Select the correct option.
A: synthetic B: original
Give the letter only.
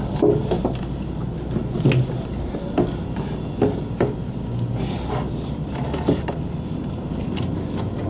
B